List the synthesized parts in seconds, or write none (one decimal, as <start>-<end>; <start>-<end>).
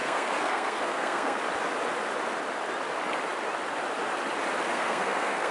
0.0-1.4; 4.7-5.5